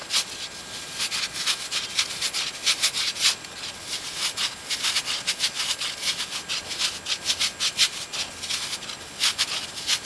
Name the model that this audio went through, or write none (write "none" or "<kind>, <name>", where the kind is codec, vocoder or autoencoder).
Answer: none